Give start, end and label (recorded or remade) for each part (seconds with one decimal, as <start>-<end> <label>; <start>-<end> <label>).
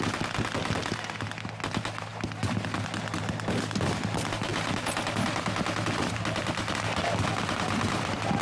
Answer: 0.0-8.4 recorded